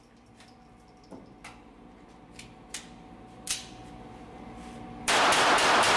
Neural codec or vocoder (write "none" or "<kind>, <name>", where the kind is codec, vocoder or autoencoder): vocoder, BigVGAN v2